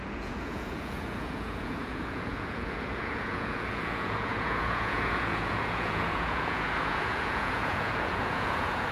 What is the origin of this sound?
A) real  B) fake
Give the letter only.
B